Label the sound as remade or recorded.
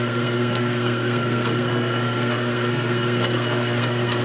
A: remade